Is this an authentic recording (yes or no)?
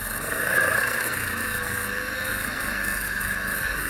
no